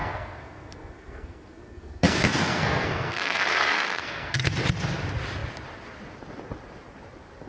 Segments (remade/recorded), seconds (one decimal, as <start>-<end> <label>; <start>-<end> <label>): 0.0-4.5 remade; 4.5-7.5 recorded